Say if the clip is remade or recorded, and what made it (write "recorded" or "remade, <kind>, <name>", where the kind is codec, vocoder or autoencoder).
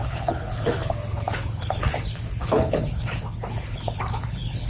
remade, codec, HILCodec